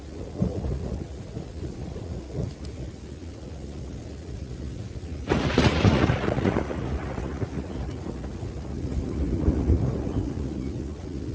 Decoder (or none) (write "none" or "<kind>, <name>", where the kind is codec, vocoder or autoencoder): vocoder, Vocos